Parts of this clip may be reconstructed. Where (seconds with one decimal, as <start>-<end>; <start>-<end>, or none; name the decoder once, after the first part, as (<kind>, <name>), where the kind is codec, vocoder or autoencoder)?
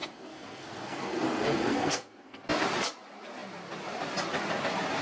0.0-2.4 (codec, SNAC)